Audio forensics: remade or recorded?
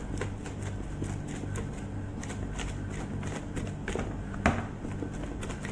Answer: recorded